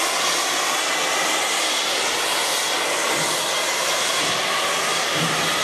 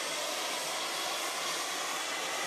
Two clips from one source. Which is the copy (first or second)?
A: second